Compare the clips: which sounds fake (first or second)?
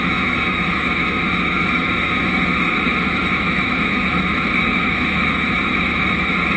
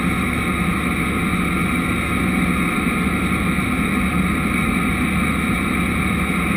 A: first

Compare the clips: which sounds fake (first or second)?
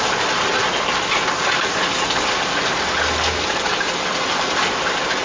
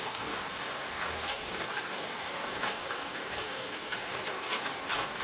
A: second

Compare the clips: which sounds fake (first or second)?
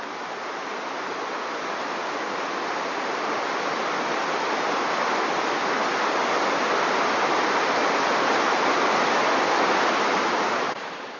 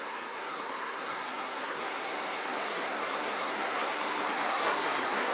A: second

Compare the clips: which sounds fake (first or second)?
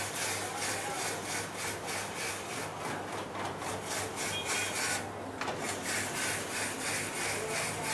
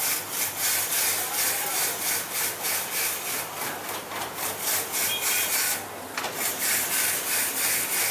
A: second